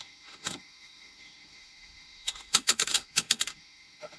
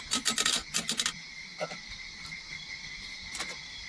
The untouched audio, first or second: second